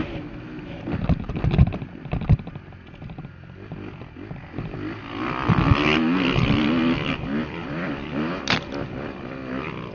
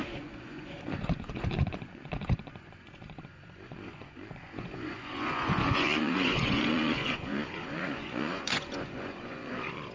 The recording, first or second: first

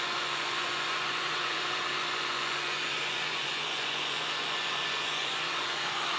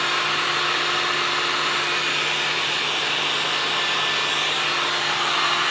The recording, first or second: second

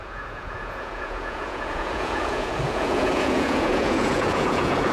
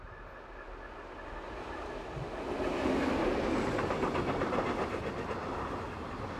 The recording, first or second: second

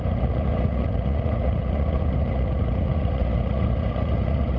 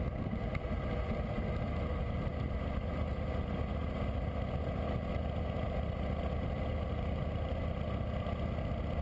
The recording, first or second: second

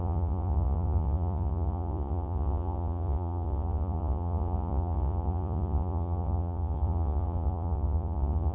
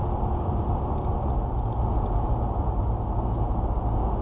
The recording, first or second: second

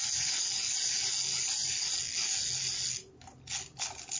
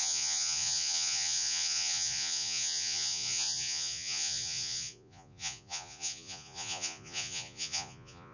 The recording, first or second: first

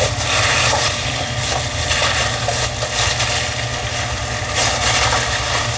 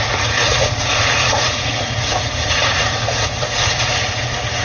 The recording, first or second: first